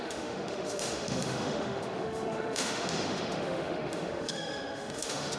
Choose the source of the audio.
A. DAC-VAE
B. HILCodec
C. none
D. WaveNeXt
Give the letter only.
A